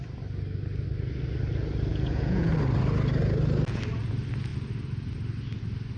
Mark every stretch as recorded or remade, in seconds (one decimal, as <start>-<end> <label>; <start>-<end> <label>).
0.0-1.9 recorded; 1.9-2.5 remade; 2.5-6.0 recorded

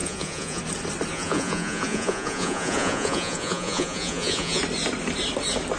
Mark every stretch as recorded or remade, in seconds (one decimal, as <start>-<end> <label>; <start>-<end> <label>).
0.0-0.6 remade; 0.6-1.1 recorded; 1.1-4.6 remade; 4.6-5.8 recorded